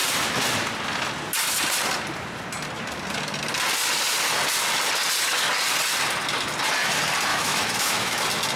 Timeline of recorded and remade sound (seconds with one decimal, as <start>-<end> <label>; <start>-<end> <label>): 0.0-7.3 recorded; 7.3-8.2 remade; 8.2-8.6 recorded

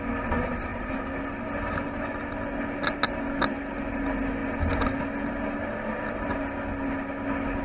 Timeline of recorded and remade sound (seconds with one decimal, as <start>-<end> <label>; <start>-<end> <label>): 0.0-7.6 recorded